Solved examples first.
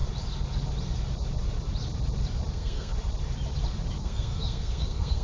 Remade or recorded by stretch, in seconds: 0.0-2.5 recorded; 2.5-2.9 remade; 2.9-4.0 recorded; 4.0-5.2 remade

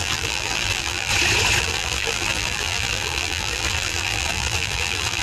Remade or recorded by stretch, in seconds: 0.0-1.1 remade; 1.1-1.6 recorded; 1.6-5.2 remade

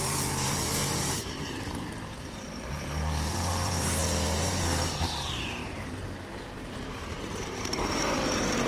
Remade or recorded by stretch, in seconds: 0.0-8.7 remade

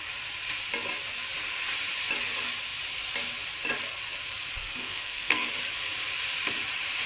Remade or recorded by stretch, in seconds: 0.0-4.6 recorded; 4.6-5.5 remade; 5.5-7.1 recorded

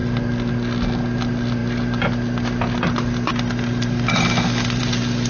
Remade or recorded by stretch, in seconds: 0.0-5.3 recorded

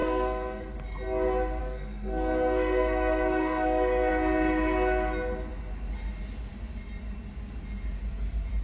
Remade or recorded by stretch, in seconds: 0.0-0.7 remade; 0.7-1.6 recorded; 1.6-4.1 remade; 4.1-8.6 recorded

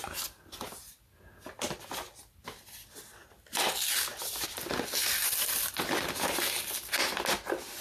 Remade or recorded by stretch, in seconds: 0.0-7.8 recorded